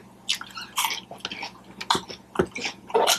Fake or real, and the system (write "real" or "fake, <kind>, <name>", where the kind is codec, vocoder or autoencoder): real